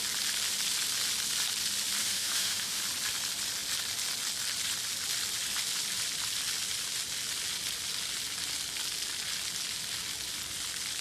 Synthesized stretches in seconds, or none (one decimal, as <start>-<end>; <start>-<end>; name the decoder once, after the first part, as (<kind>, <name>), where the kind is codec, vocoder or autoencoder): 2.0-2.8 (autoencoder, DAC-VAE)